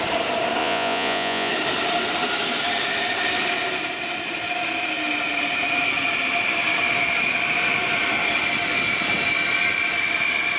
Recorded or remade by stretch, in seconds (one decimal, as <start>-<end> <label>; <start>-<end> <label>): 0.0-0.6 recorded; 0.6-1.5 remade; 1.5-10.6 recorded

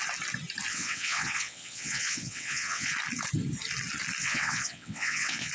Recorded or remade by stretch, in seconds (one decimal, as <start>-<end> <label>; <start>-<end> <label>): 0.0-0.7 recorded; 0.7-2.9 remade; 2.9-4.2 recorded; 4.2-5.5 remade

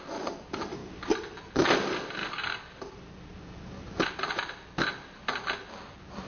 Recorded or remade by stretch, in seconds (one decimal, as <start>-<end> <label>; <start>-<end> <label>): 0.0-6.3 recorded

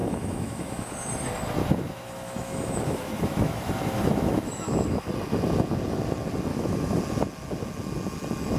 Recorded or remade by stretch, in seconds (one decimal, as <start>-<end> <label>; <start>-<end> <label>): 0.0-1.1 remade; 1.1-1.6 recorded; 1.6-5.1 remade; 5.1-6.5 recorded; 6.5-7.0 remade; 7.0-8.6 recorded

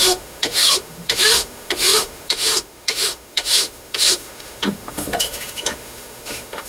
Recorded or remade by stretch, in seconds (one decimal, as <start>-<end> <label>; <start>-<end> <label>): 0.0-6.7 remade

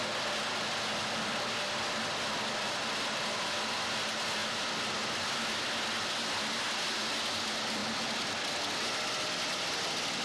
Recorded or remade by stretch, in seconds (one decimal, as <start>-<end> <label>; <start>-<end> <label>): 0.0-10.2 recorded